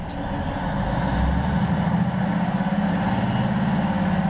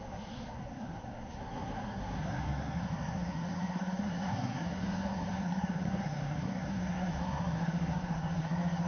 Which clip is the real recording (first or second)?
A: first